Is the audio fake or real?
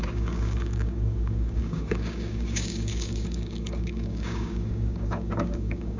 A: fake